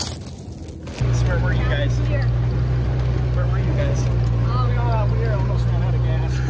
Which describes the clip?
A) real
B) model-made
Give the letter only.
A